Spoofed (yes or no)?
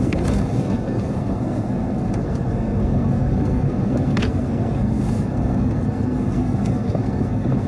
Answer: yes